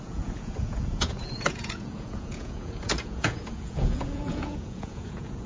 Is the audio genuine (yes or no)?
no